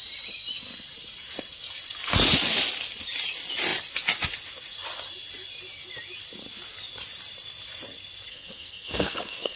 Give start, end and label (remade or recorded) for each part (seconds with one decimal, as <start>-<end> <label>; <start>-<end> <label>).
0.0-8.3 recorded; 8.3-9.6 remade